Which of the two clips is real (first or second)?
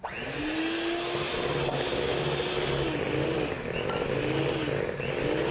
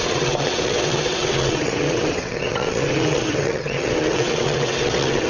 first